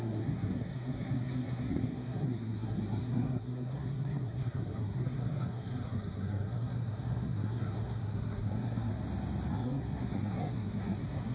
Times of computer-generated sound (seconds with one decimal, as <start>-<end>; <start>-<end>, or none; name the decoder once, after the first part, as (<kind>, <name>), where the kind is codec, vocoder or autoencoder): 0.0-8.9 (codec, SNAC); 9.5-11.3